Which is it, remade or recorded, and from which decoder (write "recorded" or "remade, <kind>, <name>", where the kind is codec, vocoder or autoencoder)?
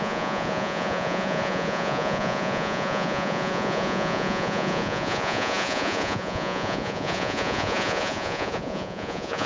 remade, vocoder, Vocos